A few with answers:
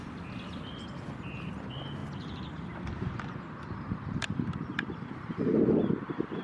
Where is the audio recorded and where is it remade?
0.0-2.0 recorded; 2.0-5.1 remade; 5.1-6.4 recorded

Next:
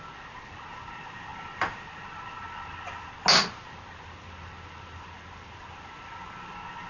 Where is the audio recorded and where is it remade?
0.0-6.9 recorded

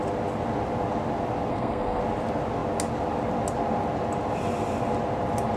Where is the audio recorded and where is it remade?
0.0-1.5 recorded; 1.5-2.0 remade; 2.0-5.6 recorded